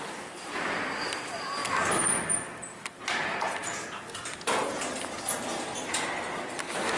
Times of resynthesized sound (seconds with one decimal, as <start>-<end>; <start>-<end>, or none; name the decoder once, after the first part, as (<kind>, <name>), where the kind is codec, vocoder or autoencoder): 0.0-3.6 (vocoder, BigVGAN v2); 5.9-7.0